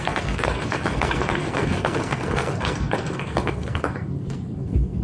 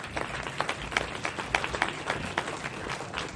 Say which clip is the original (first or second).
second